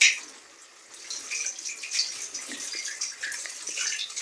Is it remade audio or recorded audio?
recorded